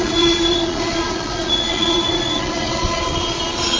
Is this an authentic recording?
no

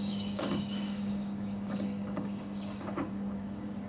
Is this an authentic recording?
no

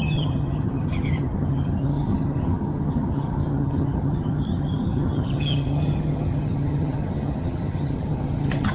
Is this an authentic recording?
no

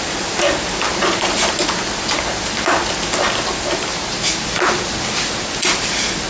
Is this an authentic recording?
yes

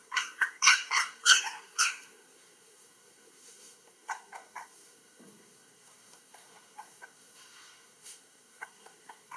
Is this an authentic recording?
no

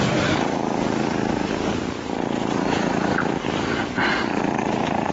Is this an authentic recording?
yes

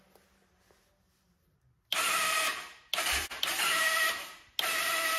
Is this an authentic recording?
yes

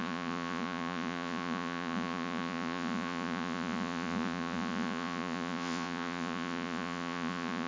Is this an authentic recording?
no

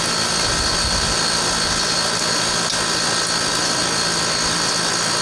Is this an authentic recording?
yes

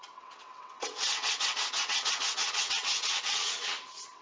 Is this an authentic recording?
no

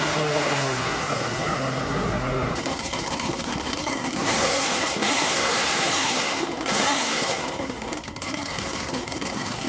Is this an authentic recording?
no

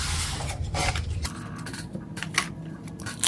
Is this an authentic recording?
yes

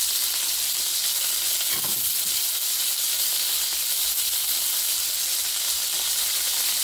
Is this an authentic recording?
yes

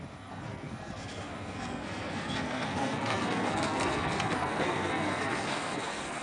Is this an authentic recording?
no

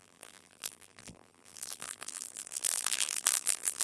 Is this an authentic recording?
no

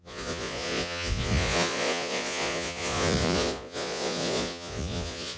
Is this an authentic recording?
no